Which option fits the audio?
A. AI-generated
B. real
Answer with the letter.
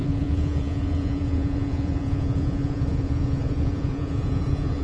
A